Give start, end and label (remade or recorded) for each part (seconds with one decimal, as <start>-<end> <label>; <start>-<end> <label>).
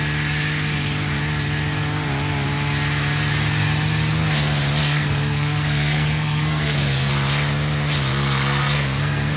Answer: 0.0-4.8 recorded; 4.8-7.1 remade; 7.1-8.1 recorded; 8.1-9.4 remade